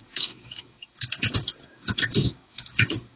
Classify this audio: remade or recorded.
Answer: remade